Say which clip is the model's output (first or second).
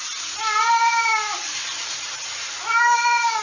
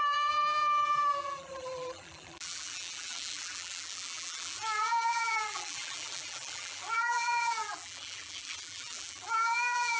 second